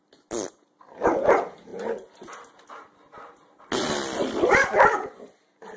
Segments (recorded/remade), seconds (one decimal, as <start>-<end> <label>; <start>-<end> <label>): 0.0-5.8 recorded